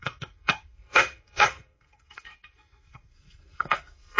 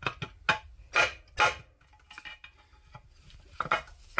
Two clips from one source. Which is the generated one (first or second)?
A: first